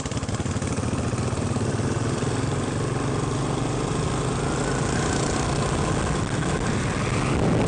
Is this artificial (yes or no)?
no